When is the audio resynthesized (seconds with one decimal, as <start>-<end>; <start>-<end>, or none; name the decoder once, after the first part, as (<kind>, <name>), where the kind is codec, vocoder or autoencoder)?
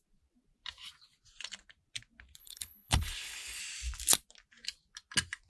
2.4-3.6 (codec, HILCodec)